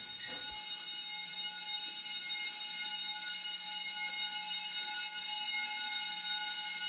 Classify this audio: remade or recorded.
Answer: recorded